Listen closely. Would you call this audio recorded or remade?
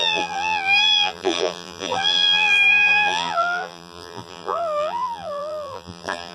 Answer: remade